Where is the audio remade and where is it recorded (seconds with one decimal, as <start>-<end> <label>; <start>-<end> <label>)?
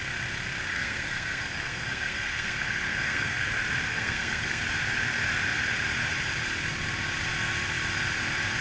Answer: 0.0-0.7 recorded; 0.7-3.5 remade; 3.5-3.9 recorded; 3.9-4.6 remade; 4.6-8.6 recorded